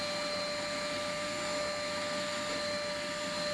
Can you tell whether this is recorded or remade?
recorded